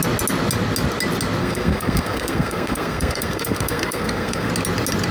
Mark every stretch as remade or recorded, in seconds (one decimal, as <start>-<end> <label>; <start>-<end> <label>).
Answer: 0.0-1.4 recorded; 1.4-4.5 remade; 4.5-5.1 recorded